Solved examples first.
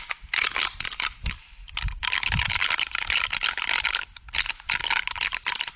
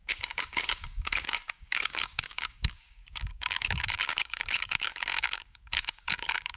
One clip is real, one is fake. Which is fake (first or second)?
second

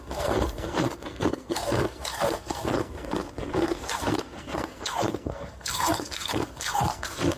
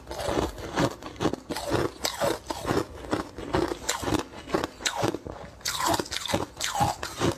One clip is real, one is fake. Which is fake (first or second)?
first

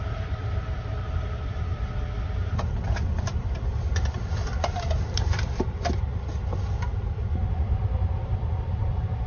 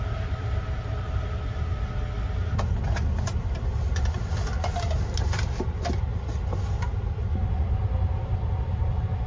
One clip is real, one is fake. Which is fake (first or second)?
first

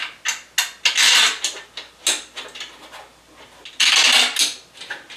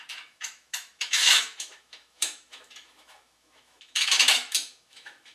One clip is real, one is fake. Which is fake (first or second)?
second